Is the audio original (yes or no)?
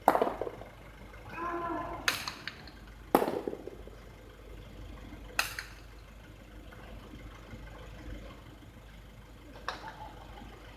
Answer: yes